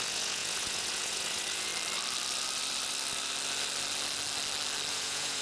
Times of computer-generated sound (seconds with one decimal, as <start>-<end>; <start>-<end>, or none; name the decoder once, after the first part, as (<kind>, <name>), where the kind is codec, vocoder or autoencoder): 0.0-1.7 (vocoder, Vocos); 4.9-5.4